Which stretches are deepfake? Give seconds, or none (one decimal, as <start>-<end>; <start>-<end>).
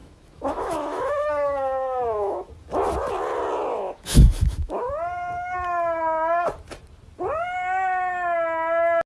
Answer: 0.0-2.5; 3.7-4.9